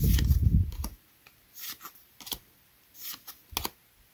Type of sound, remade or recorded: recorded